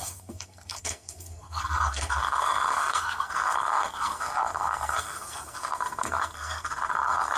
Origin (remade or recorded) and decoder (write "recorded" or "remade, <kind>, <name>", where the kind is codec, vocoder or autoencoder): remade, codec, SNAC